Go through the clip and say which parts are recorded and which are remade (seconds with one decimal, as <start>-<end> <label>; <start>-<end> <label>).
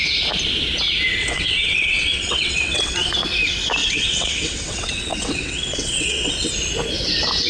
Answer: 0.0-1.2 recorded; 1.2-3.1 remade; 3.1-3.8 recorded; 3.8-6.5 remade; 6.5-7.5 recorded